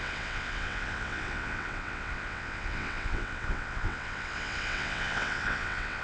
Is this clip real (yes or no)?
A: no